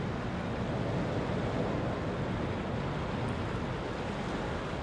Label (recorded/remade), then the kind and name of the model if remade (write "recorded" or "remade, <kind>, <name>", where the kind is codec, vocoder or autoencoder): recorded